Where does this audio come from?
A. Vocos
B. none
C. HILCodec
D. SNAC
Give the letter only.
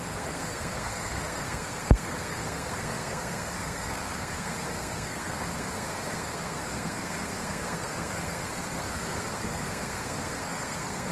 D